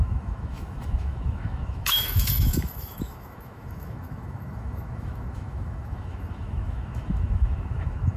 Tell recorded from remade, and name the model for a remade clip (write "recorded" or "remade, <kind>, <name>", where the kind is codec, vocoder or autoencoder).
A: remade, autoencoder, DAC-VAE